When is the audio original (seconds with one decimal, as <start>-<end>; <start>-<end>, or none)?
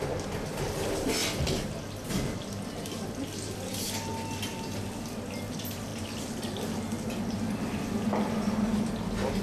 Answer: 0.0-9.4